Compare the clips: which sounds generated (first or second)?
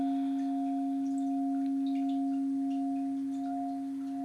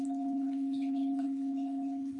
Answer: second